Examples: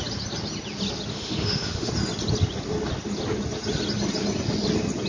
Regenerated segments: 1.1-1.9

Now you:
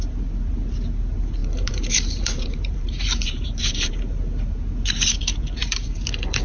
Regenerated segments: 1.4-3.9; 5.6-6.4

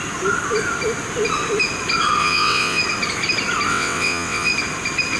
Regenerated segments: 2.2-2.8; 3.7-4.5